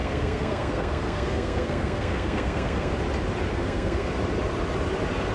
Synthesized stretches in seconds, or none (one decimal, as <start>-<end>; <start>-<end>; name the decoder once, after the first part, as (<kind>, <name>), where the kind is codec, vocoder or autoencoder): 0.0-2.9 (codec, SNAC); 3.5-4.1